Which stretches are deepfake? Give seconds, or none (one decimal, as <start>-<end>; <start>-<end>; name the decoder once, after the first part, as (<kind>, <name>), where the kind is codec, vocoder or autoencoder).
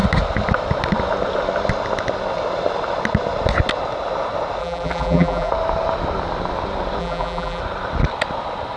4.6-5.5 (vocoder, BigVGAN v2); 7.0-7.6